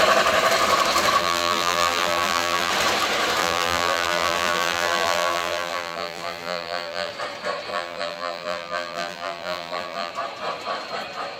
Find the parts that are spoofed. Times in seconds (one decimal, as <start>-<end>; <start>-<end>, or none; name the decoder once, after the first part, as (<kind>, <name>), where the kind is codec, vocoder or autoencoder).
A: 1.2-2.7 (vocoder, BigVGAN v2); 3.4-7.1; 7.7-10.1